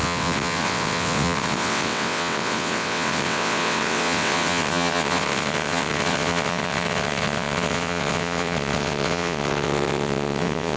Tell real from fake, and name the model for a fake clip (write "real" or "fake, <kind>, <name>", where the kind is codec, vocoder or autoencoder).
fake, vocoder, WaveNeXt